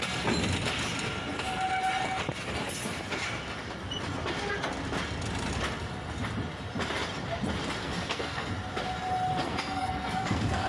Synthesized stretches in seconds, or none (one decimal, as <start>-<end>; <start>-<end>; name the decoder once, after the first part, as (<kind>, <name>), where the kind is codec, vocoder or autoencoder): 7.8-8.5 (codec, SNAC); 9.4-10.7